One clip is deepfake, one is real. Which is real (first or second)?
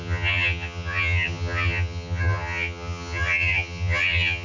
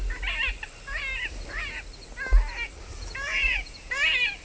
second